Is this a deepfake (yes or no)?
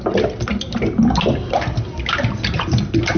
no